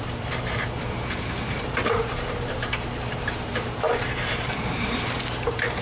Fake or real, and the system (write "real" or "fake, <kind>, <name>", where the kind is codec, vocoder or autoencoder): fake, vocoder, BigVGAN v2